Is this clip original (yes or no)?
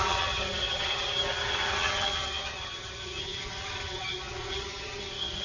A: no